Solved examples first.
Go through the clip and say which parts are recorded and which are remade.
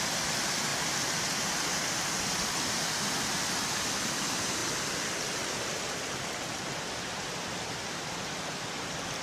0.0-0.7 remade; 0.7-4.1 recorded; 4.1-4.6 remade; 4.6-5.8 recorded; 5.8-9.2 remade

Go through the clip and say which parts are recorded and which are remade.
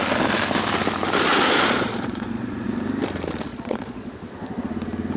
0.0-1.3 recorded; 1.3-2.7 remade; 2.7-3.5 recorded; 3.5-4.1 remade; 4.1-5.2 recorded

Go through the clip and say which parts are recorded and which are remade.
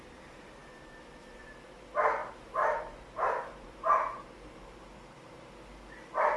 0.0-2.2 recorded; 2.2-5.5 remade; 5.5-6.4 recorded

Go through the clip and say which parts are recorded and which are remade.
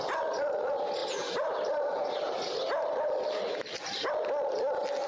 0.0-1.0 recorded; 1.0-4.1 remade; 4.1-5.1 recorded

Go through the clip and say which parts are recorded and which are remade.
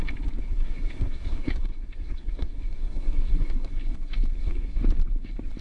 0.0-0.4 recorded; 0.4-3.8 remade; 3.8-4.3 recorded; 4.3-4.8 remade; 4.8-5.6 recorded